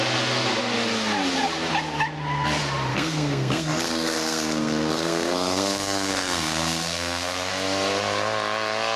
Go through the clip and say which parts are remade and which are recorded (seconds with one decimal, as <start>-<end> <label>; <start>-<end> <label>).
0.0-2.9 recorded; 2.9-7.5 remade; 7.5-9.0 recorded